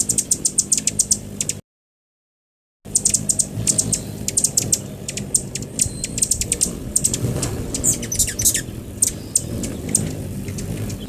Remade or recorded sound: recorded